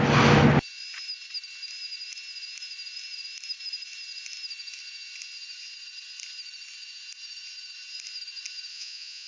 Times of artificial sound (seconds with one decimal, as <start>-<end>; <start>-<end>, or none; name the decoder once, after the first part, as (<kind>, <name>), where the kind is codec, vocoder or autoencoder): 8.7-9.3 (vocoder, Vocos)